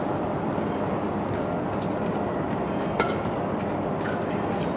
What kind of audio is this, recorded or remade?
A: recorded